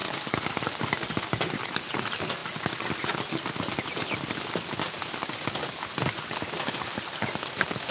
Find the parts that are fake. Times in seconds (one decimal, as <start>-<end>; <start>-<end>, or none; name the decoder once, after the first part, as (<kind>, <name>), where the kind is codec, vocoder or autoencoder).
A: none